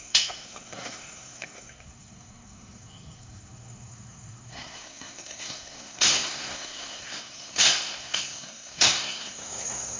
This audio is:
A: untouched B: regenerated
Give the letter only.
B